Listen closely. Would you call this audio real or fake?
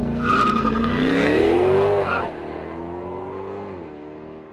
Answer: fake